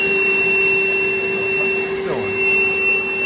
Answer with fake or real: real